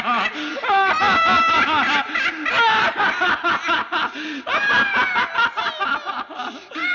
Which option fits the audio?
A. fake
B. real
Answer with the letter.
B